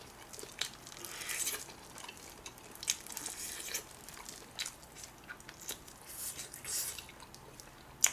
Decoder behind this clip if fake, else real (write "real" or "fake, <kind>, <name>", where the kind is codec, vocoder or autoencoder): real